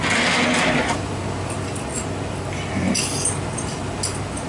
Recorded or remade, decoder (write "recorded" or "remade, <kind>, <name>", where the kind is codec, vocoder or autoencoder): recorded